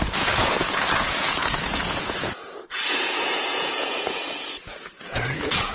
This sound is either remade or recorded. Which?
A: remade